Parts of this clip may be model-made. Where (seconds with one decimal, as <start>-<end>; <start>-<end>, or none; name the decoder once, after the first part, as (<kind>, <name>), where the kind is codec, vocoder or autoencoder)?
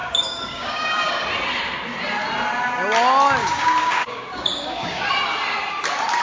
0.0-1.1 (codec, DAC); 3.4-5.0